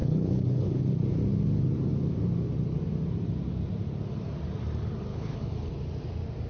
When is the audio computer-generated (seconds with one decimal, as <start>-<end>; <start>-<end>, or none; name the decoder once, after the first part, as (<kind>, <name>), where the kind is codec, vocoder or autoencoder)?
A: 0.0-0.8 (codec, HILCodec); 5.1-5.7